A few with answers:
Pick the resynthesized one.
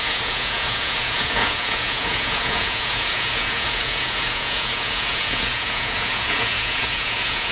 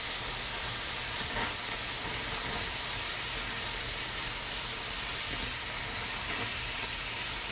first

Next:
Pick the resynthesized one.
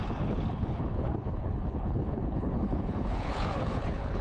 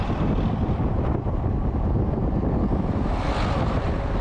first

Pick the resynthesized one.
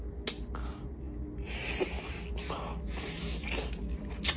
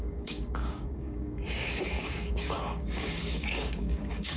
second